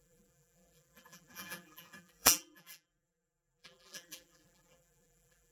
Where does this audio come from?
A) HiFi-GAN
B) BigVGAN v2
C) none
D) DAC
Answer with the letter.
B